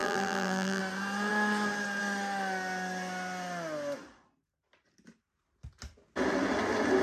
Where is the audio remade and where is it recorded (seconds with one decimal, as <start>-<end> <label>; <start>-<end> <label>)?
0.0-0.8 remade; 0.8-7.0 recorded